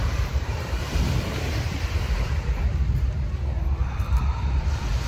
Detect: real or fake fake